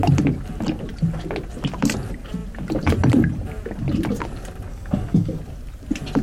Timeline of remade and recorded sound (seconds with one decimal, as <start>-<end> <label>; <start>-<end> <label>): 0.0-4.7 recorded; 4.7-5.4 remade; 5.4-6.2 recorded